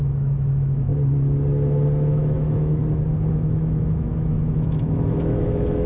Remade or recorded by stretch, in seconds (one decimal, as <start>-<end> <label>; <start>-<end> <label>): 0.0-0.9 remade; 0.9-2.1 recorded; 2.1-2.8 remade; 2.8-3.3 recorded; 3.3-5.9 remade